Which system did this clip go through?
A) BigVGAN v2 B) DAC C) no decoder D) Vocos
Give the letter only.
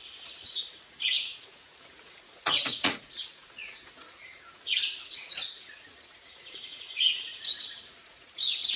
D